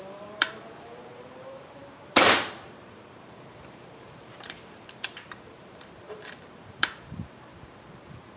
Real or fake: fake